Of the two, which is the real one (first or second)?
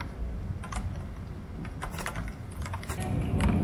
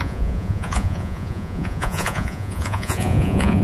first